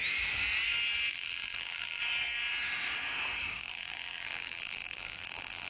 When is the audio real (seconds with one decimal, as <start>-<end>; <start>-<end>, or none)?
0.0-1.1; 2.0-3.6